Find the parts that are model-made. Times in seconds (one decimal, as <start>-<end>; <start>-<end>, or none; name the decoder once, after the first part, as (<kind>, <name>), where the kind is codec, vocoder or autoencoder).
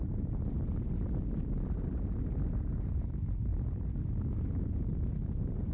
none